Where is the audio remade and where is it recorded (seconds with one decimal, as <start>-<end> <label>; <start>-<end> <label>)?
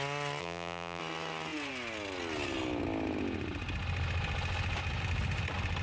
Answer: 0.0-0.4 recorded; 0.4-1.0 remade; 1.0-5.8 recorded